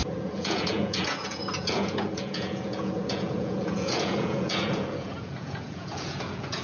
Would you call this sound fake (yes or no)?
yes